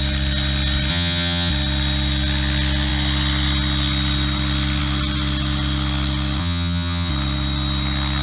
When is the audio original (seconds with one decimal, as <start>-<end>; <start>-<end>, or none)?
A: 0.0-0.9; 1.5-6.4; 7.1-8.2